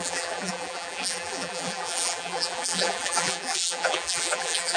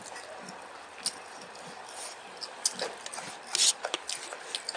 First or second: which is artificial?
first